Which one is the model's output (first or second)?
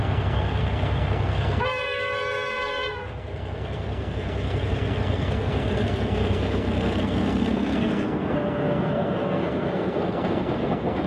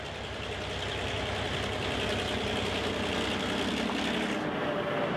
first